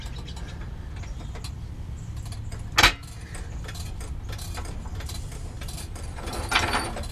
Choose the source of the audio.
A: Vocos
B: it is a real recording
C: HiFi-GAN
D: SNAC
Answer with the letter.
B